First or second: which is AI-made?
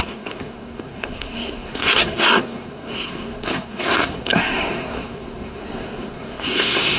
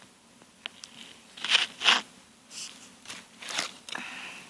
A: first